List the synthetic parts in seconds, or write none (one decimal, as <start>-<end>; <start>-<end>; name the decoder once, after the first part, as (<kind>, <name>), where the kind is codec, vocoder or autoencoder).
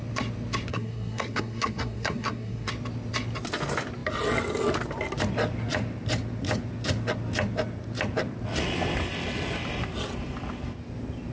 0.7-2.7 (codec, SNAC)